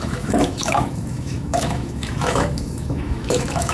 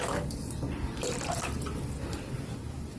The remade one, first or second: first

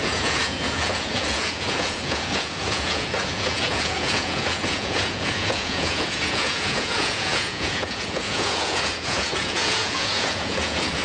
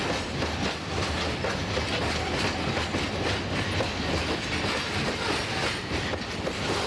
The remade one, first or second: first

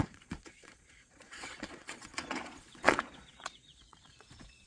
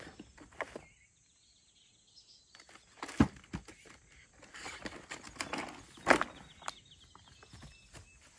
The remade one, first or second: first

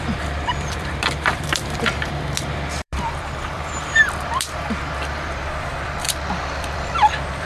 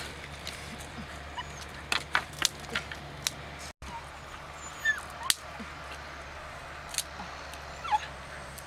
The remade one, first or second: first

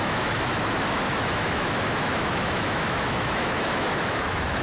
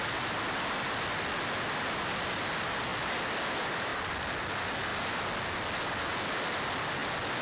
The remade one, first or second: first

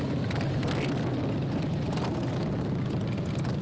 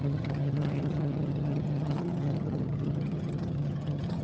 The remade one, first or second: second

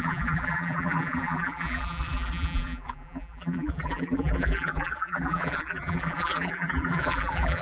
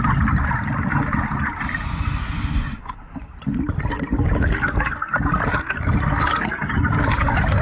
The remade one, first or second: first